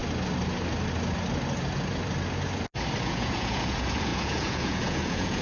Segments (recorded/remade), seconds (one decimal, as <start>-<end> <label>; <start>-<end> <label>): 0.0-3.0 recorded; 3.0-5.4 remade